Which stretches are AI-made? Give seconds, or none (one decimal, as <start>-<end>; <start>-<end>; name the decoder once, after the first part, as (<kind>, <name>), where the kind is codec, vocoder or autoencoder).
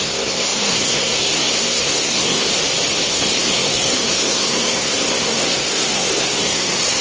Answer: 0.0-2.5 (codec, SNAC); 3.1-7.0